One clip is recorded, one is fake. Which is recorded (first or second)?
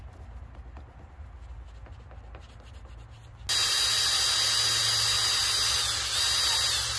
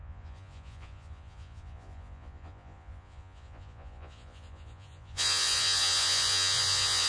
first